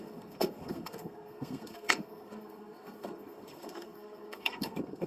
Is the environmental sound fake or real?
fake